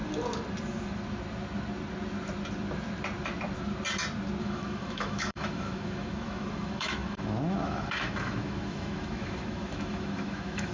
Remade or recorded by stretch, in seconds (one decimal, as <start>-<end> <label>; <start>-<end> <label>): 0.0-4.4 recorded; 4.4-10.7 remade